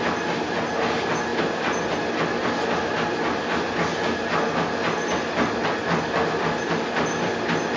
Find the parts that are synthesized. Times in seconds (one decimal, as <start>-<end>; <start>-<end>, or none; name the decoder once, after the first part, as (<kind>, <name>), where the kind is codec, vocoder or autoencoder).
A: none